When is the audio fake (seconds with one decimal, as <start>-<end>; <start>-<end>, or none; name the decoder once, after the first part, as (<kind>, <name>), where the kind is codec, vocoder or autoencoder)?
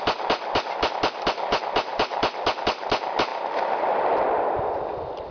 1.9-2.4 (vocoder, BigVGAN v2); 3.3-5.3